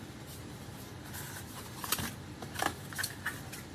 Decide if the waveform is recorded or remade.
recorded